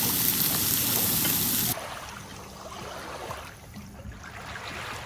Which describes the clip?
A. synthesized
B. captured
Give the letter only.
B